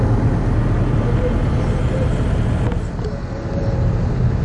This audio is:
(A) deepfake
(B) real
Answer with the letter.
B